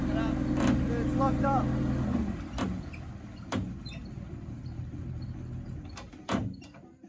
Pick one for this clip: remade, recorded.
recorded